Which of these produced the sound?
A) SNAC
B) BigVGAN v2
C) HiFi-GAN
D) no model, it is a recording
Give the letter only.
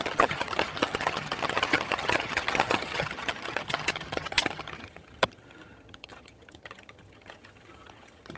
C